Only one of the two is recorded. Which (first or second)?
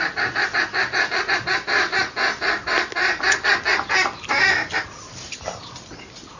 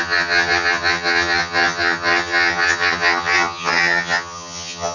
first